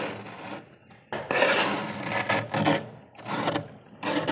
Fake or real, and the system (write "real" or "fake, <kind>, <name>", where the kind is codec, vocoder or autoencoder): real